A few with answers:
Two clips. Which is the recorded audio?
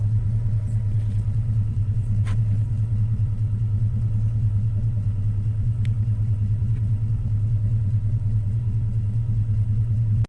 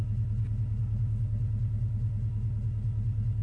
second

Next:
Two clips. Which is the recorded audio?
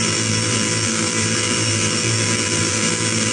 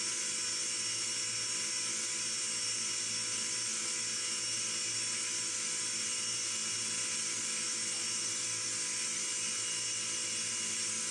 second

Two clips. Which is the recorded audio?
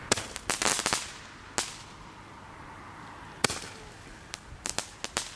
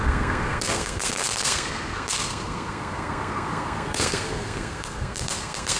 first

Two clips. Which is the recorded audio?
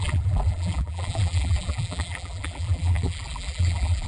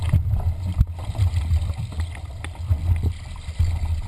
second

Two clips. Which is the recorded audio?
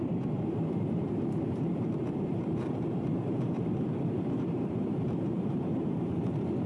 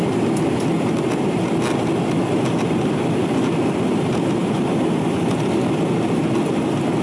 second